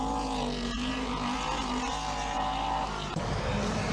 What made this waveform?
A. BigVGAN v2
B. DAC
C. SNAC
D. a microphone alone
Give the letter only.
A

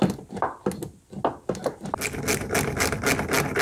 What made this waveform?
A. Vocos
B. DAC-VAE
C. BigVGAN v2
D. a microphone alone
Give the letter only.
D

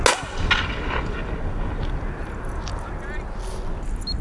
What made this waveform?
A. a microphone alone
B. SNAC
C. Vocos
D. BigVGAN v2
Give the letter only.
A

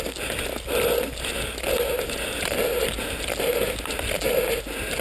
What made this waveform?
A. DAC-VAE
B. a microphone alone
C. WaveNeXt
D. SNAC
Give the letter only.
B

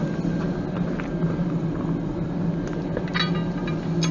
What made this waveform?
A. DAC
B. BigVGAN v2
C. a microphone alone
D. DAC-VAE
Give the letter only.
C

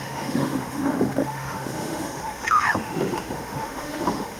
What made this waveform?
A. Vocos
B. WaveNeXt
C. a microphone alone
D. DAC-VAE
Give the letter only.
D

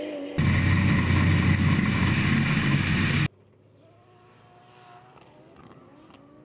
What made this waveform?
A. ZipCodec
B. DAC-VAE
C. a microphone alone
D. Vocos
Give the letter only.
C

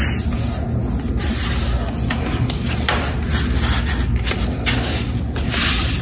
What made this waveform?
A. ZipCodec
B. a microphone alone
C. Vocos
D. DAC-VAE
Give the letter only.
B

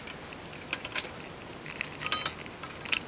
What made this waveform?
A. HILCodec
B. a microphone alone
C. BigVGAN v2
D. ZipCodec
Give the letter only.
B